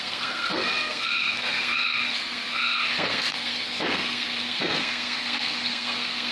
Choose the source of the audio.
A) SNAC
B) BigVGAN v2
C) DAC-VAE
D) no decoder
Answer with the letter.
A